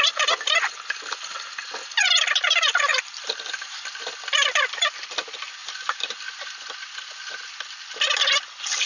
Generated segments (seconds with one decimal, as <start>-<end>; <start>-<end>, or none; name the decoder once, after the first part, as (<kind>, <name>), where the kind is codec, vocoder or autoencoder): 2.9-3.8 (vocoder, BigVGAN v2); 5.6-6.2